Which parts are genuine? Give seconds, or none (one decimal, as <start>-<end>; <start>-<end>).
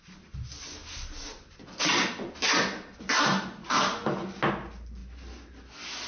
0.0-6.1